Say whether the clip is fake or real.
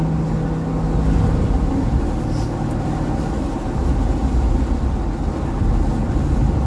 real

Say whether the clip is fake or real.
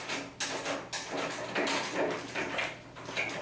real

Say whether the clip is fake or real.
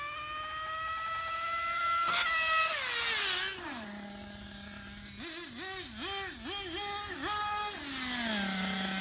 real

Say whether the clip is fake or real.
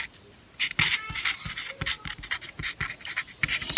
real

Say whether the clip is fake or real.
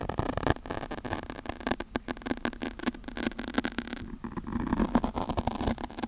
real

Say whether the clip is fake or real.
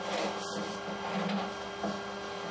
real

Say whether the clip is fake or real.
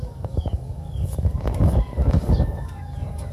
fake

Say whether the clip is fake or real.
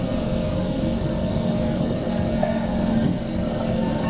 fake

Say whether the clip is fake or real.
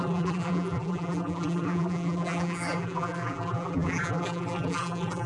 fake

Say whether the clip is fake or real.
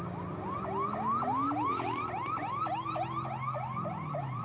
real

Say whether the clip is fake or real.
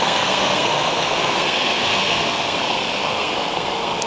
fake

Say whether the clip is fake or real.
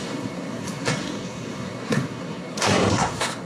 fake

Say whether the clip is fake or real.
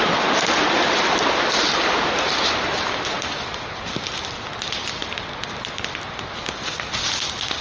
real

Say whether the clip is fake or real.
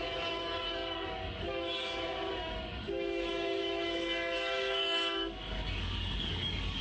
fake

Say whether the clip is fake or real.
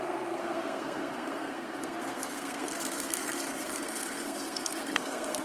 fake